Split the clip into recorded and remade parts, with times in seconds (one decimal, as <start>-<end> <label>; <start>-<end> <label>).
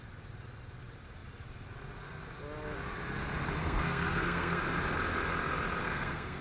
0.0-3.6 recorded; 3.6-4.6 remade; 4.6-5.8 recorded; 5.8-6.4 remade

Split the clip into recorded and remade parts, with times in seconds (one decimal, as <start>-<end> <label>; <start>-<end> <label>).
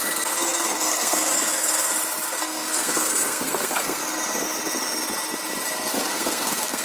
0.0-1.9 remade; 1.9-2.4 recorded; 2.4-4.0 remade; 4.0-5.9 recorded; 5.9-6.8 remade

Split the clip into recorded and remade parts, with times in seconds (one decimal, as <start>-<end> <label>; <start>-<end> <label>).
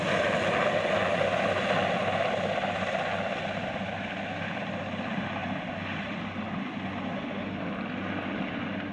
0.0-8.9 recorded